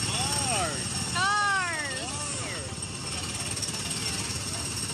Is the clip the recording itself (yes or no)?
yes